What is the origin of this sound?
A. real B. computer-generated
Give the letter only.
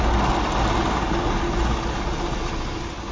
A